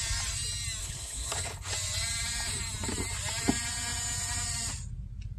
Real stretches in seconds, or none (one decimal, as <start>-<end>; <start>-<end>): 0.0-0.8; 1.7-5.4